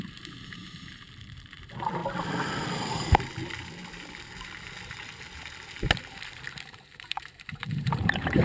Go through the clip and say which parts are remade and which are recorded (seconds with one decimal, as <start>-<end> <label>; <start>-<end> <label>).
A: 0.0-0.6 remade; 0.6-1.3 recorded; 1.3-2.0 remade; 2.0-6.6 recorded; 6.6-8.4 remade